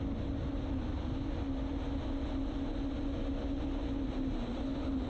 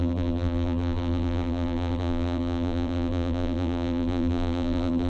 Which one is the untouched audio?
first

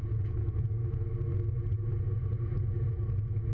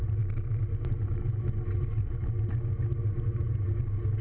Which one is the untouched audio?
second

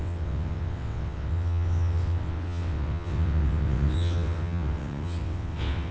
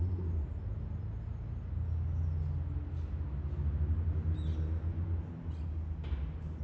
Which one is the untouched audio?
second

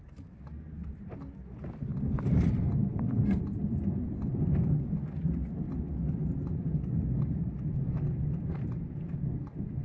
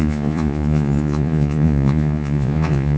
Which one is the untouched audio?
first